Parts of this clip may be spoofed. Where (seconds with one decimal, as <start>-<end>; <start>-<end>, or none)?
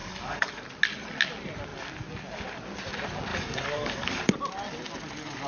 0.0-0.6; 3.3-4.2